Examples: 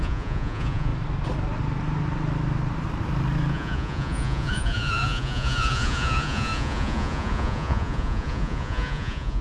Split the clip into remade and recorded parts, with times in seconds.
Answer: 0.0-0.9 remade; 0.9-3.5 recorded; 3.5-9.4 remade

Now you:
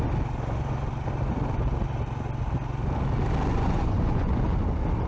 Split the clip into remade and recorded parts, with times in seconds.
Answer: 0.0-3.5 recorded; 3.5-4.4 remade; 4.4-5.1 recorded

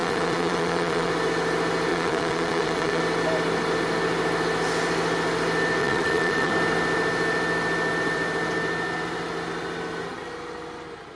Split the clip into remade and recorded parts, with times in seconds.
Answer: 0.0-1.1 remade; 1.1-1.9 recorded; 1.9-3.0 remade; 3.0-5.8 recorded; 5.8-6.5 remade; 6.5-11.2 recorded

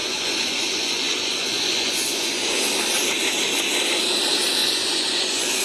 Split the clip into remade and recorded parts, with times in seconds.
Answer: 0.0-2.6 remade; 2.6-4.6 recorded; 4.6-5.6 remade

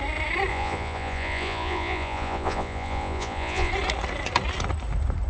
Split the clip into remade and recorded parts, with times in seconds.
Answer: 0.0-0.5 recorded; 0.5-3.7 remade; 3.7-5.3 recorded